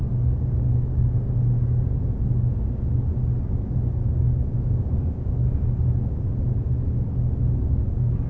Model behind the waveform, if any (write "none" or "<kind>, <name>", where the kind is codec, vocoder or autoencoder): none